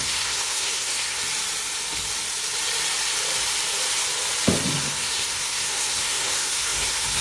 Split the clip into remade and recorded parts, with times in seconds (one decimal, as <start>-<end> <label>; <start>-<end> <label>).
0.0-1.2 remade; 1.2-4.8 recorded; 4.8-7.2 remade